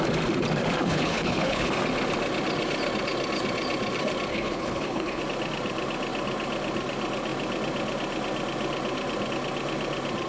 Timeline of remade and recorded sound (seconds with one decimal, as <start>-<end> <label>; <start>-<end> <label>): 0.0-0.8 recorded; 0.8-1.7 remade; 1.7-4.3 recorded; 4.3-5.2 remade; 5.2-10.3 recorded